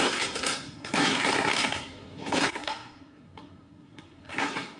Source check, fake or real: fake